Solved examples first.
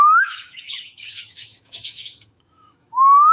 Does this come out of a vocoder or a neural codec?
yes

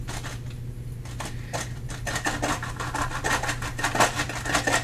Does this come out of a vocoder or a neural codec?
no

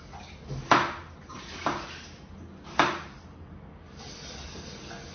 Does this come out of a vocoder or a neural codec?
no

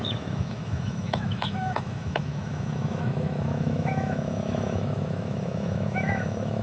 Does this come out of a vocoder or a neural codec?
yes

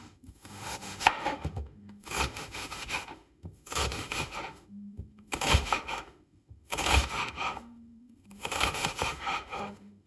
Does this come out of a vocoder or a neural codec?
yes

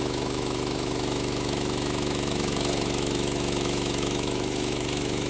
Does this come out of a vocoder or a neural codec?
yes